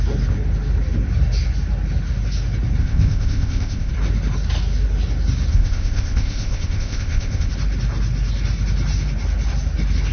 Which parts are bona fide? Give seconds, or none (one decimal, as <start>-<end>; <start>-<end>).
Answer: 0.0-2.8; 3.9-5.5; 7.5-10.1